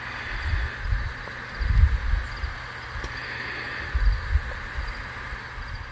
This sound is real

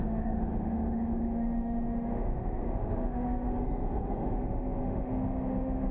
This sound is fake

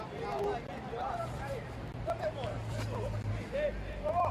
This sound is real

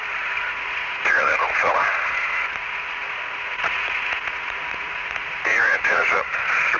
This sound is fake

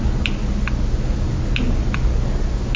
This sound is real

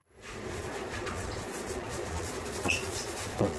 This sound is fake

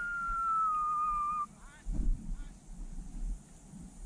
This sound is real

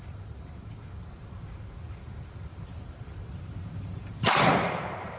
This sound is fake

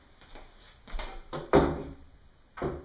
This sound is real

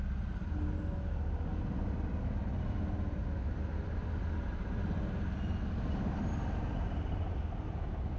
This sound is real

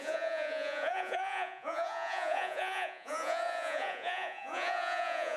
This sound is fake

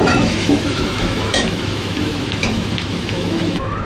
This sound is fake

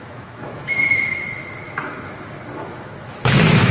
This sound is fake